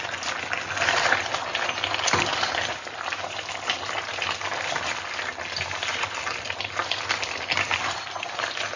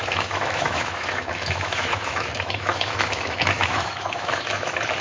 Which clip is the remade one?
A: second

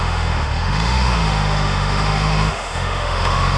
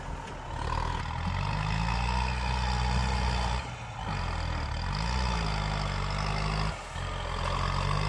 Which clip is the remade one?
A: first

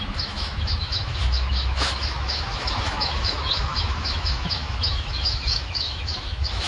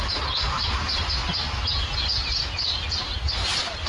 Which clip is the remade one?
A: first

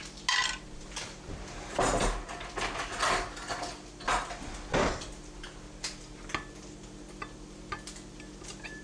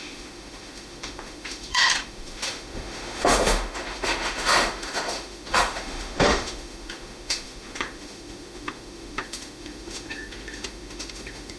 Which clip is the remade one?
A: second